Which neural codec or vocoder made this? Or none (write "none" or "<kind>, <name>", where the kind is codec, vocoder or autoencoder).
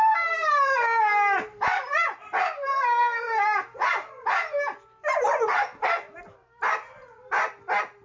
none